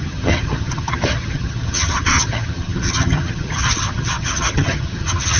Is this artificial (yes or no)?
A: yes